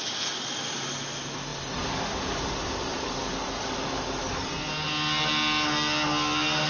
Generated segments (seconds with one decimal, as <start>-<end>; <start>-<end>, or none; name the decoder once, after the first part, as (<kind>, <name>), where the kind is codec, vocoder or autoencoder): 2.9-3.9 (vocoder, BigVGAN v2)